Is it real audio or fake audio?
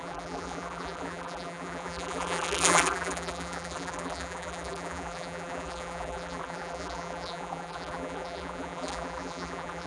fake